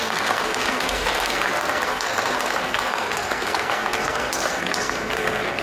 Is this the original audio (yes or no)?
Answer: no